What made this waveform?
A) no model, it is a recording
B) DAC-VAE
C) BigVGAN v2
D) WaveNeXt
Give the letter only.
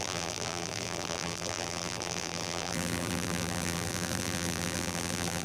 C